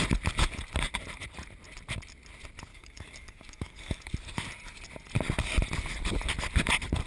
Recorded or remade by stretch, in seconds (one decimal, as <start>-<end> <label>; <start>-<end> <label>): 0.0-2.7 recorded; 2.7-4.1 remade; 4.1-7.1 recorded